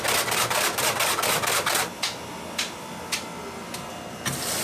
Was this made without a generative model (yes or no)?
yes